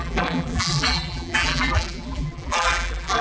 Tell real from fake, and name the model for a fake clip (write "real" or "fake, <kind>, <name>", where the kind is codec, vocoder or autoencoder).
fake, vocoder, BigVGAN v2